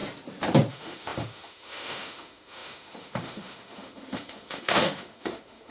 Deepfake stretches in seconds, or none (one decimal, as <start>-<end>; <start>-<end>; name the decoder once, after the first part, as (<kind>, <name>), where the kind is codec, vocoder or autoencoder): 0.7-5.7 (autoencoder, DAC-VAE)